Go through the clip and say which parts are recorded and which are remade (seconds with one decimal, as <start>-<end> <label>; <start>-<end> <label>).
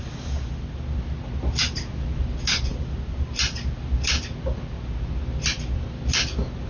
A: 0.0-6.7 recorded